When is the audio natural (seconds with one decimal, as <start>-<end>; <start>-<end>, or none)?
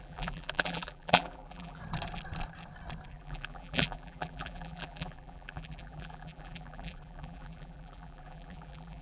1.8-3.1